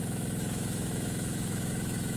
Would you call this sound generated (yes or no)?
yes